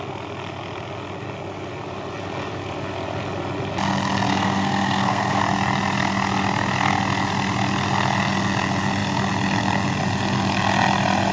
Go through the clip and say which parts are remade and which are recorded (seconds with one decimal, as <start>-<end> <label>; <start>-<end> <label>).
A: 0.0-4.3 recorded; 4.3-5.4 remade; 5.4-11.3 recorded